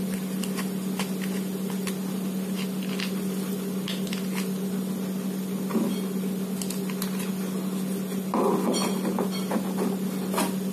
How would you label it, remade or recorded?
recorded